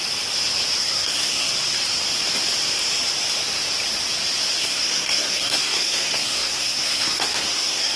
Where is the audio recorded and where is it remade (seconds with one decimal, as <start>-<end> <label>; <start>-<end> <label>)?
0.0-0.8 recorded; 0.8-1.5 remade; 1.5-4.6 recorded; 4.6-8.0 remade